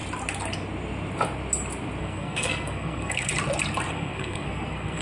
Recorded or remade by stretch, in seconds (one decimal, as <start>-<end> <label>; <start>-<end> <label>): 0.0-2.0 recorded; 2.0-3.3 remade; 3.3-3.9 recorded; 3.9-5.0 remade